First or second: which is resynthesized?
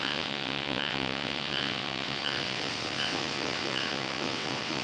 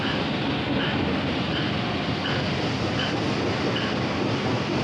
first